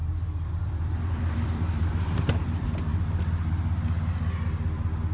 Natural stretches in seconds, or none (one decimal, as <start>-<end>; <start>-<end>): 2.2-5.1